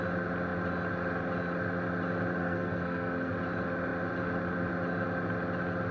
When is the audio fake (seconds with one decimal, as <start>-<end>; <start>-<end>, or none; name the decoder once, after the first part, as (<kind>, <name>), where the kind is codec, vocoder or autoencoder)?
2.4-3.3 (codec, SNAC)